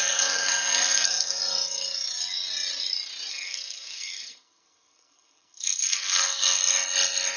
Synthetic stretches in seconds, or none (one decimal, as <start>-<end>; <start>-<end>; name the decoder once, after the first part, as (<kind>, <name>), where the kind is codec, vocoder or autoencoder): 0.0-1.4 (codec, SNAC); 3.3-6.6